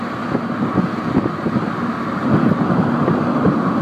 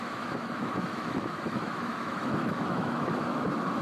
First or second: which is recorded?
first